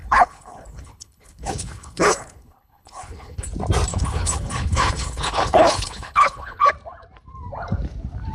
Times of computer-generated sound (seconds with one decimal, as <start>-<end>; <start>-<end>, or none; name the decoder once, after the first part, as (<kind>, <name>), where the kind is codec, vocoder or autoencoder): 0.0-3.5 (codec, HILCodec); 3.9-6.7